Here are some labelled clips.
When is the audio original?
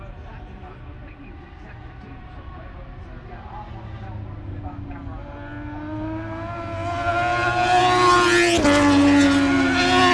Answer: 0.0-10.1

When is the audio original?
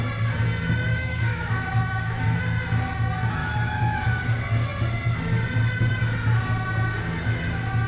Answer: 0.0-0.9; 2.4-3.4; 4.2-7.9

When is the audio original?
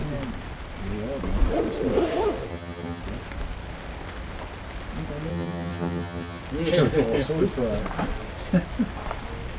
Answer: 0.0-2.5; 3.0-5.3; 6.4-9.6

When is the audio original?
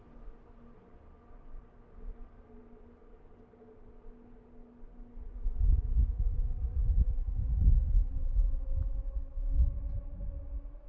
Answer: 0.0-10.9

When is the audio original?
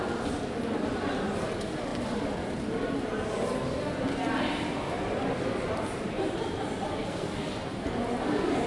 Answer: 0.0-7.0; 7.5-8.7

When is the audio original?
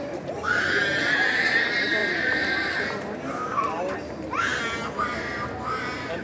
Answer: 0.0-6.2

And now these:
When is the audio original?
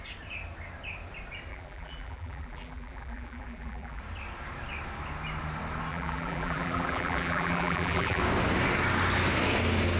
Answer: 0.0-1.5; 4.0-5.9; 8.2-10.0